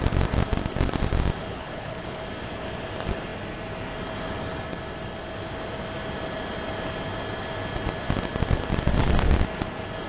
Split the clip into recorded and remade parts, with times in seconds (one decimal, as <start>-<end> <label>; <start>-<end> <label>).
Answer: 0.0-1.5 recorded; 1.5-2.2 remade; 2.2-10.1 recorded